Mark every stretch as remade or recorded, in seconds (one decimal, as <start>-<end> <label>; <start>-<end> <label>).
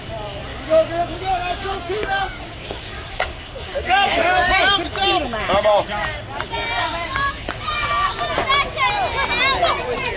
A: 0.0-0.5 recorded; 0.5-4.6 remade; 4.6-6.8 recorded; 6.8-8.2 remade; 8.2-10.2 recorded